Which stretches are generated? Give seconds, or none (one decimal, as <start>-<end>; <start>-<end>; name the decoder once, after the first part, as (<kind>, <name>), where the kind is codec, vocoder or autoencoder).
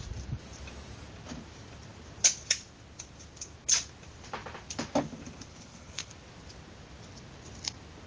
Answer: 5.5-6.1 (codec, SNAC)